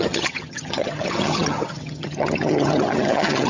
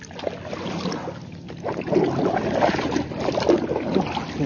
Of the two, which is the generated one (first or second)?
first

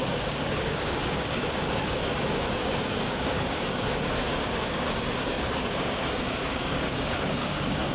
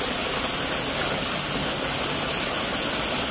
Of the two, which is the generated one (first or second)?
first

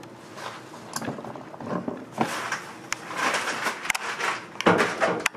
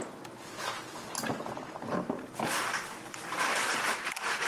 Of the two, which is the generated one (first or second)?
second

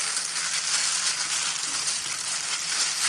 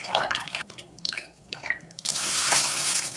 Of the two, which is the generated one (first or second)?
second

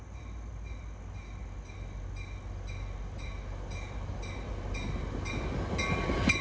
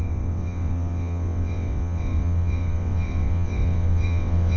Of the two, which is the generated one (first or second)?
second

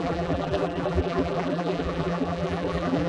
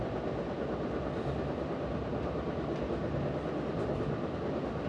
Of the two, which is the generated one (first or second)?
first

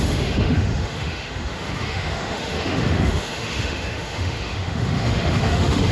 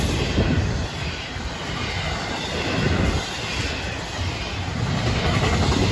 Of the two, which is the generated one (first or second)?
first